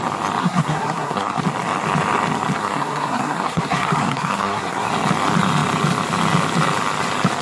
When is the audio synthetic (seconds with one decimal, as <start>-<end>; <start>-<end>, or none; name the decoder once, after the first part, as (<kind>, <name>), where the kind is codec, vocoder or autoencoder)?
0.4-1.4 (codec, SNAC); 2.6-4.9